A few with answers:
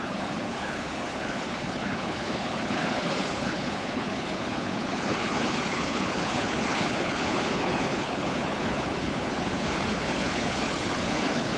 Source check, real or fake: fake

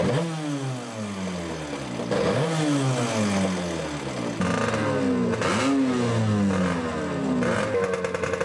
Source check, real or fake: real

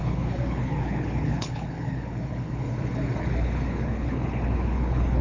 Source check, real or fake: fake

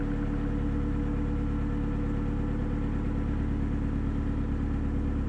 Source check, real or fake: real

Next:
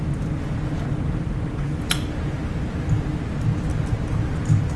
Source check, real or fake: real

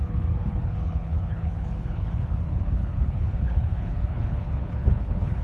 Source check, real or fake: fake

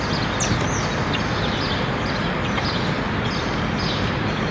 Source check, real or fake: real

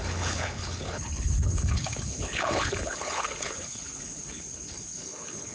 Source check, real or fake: fake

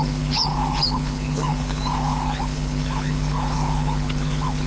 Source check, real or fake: fake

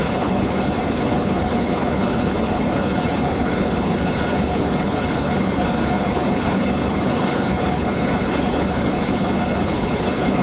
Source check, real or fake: fake